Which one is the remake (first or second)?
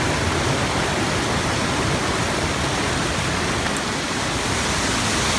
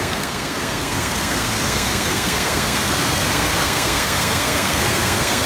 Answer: second